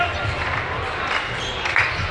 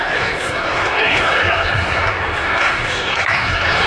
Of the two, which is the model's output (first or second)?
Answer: second